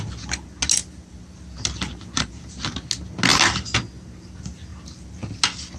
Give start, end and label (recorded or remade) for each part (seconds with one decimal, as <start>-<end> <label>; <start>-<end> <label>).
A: 0.0-1.9 recorded; 1.9-2.7 remade; 2.7-5.8 recorded